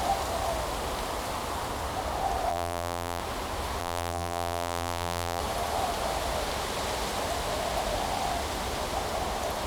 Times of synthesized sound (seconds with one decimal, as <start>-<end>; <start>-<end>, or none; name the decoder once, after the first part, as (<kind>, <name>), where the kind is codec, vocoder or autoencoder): 2.5-3.2 (vocoder, BigVGAN v2); 3.8-5.4